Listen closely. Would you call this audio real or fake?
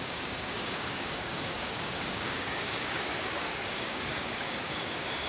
fake